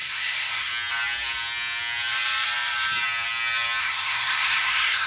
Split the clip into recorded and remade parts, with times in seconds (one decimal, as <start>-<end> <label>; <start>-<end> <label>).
0.0-0.7 remade; 0.7-3.8 recorded; 3.8-5.1 remade